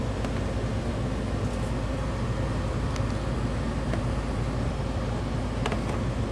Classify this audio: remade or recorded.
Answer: recorded